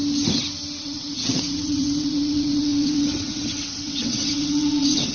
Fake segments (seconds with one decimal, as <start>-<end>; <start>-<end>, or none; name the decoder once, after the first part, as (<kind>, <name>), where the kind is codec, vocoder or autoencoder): 0.8-5.1 (vocoder, WaveNeXt)